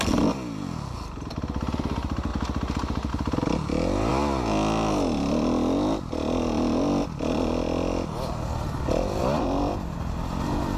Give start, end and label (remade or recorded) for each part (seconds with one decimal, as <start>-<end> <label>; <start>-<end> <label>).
0.0-10.8 recorded